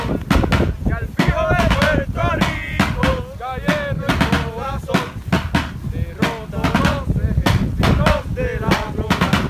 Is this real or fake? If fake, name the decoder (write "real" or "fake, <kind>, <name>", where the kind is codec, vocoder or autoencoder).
real